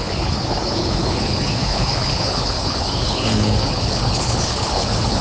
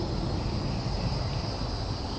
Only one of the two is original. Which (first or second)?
second